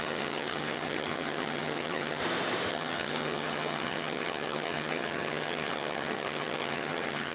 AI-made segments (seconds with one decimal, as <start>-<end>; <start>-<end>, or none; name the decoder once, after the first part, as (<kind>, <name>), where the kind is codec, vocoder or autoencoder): 0.0-2.2 (vocoder, HiFi-GAN); 2.7-7.3